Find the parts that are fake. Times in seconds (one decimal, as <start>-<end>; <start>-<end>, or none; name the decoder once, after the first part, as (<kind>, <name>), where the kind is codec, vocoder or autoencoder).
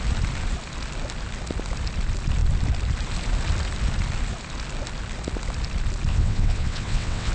6.1-7.3 (vocoder, WaveNeXt)